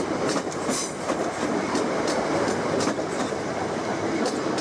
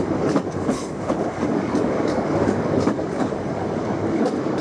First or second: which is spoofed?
second